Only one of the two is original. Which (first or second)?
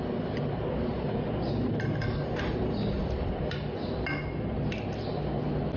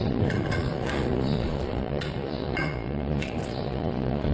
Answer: first